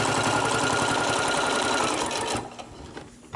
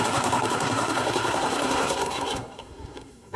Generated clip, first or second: second